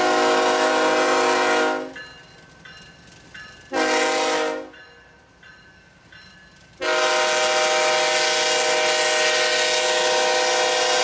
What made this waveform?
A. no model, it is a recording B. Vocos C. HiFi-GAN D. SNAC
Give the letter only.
A